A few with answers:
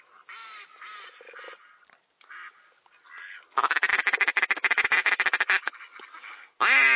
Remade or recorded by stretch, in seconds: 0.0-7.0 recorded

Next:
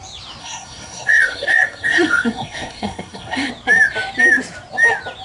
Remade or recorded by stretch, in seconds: 0.0-0.4 recorded; 0.4-3.5 remade; 3.5-5.2 recorded

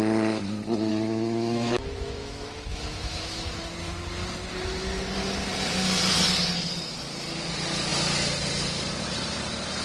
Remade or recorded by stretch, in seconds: 0.0-0.9 recorded; 0.9-3.5 remade; 3.5-9.8 recorded

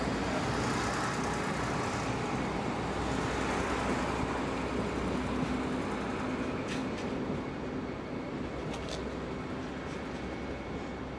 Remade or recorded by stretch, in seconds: 0.0-11.2 recorded

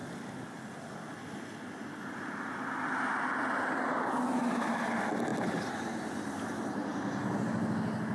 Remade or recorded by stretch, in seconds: 0.0-8.1 recorded

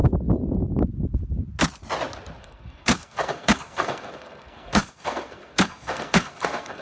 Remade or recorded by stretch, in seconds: 0.0-2.4 recorded; 2.4-6.8 remade

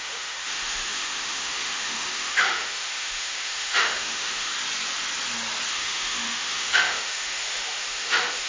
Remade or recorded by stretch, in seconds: 0.0-4.5 remade; 4.5-5.7 recorded; 5.7-8.5 remade